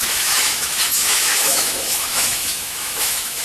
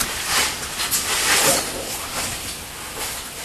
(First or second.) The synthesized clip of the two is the first